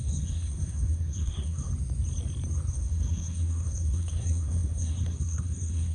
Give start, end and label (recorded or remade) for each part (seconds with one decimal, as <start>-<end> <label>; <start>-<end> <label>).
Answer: 0.0-1.7 remade; 1.7-2.7 recorded; 2.7-5.9 remade